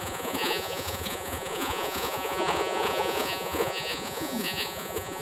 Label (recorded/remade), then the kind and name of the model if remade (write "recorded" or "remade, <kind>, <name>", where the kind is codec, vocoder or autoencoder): remade, vocoder, Vocos